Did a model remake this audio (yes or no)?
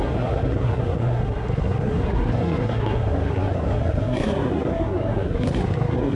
yes